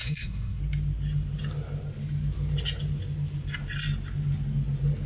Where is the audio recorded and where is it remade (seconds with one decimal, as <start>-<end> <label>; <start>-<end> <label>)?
0.0-0.6 remade; 0.6-5.1 recorded